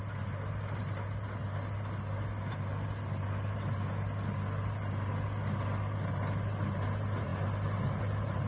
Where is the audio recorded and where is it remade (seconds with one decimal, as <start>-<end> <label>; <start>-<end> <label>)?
0.0-8.5 recorded